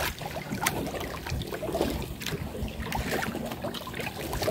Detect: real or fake real